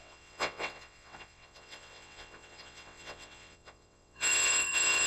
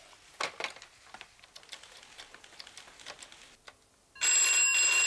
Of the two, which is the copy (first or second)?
first